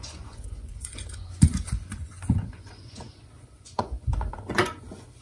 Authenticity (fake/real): fake